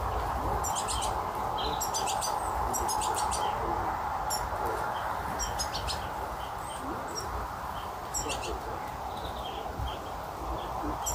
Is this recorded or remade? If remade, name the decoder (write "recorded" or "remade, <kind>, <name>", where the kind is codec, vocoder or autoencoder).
recorded